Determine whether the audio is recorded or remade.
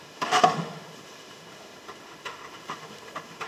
remade